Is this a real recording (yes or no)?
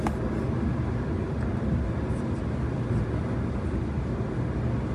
yes